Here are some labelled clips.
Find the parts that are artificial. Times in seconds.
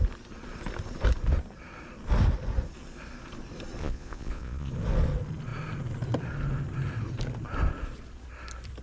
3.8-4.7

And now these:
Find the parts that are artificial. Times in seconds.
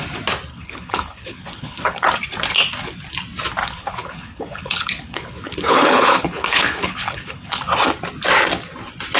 0.5-2.1; 3.6-7.6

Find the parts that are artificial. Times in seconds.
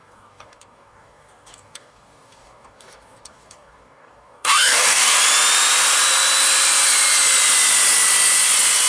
0.0-5.2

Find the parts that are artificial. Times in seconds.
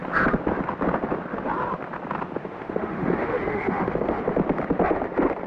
2.4-4.2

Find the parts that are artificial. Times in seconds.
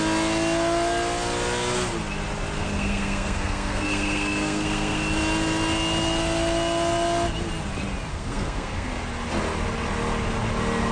2.6-5.0; 8.1-8.9